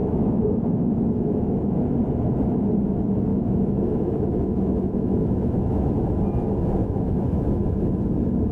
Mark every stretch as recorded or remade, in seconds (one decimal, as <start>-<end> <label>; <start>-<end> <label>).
0.0-1.7 remade; 1.7-3.3 recorded; 3.3-5.9 remade; 5.9-6.8 recorded; 6.8-7.6 remade; 7.6-8.5 recorded